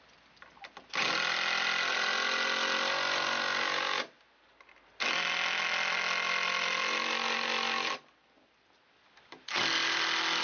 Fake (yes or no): no